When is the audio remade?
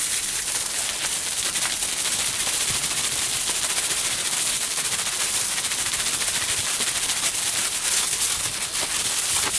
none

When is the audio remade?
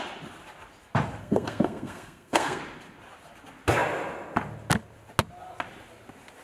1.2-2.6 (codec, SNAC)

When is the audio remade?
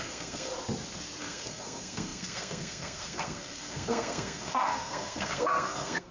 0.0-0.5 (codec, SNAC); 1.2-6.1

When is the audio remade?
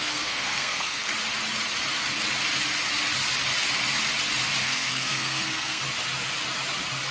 0.0-1.1 (codec, SNAC); 4.6-5.8